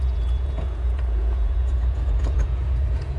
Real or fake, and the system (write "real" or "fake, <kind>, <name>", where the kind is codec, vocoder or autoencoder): fake, vocoder, Vocos